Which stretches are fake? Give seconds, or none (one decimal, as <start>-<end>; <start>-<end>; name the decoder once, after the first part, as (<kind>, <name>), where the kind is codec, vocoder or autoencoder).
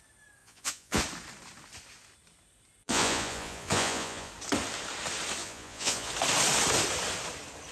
0.4-1.0 (vocoder, Vocos); 2.8-4.3; 5.4-6.1